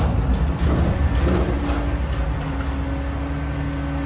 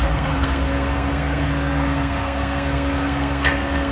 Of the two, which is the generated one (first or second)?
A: second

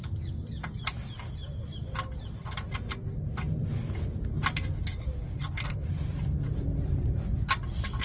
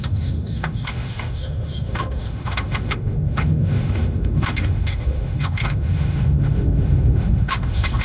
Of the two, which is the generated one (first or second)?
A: second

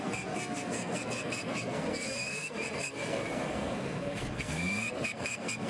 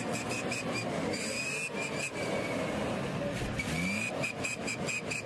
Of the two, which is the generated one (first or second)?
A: first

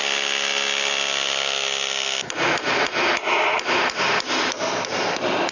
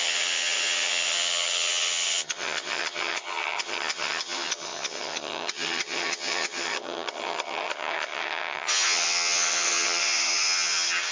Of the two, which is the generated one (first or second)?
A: second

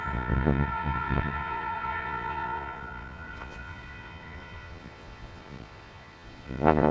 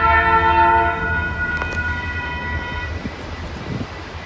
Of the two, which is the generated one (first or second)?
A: first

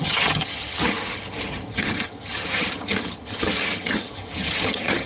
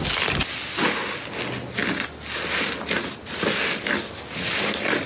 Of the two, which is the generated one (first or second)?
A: first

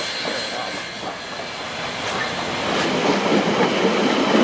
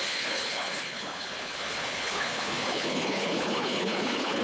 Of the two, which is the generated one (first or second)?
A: second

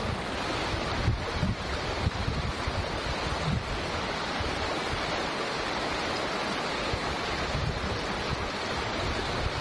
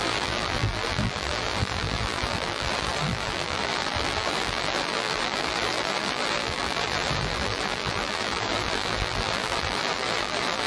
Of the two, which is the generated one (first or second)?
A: second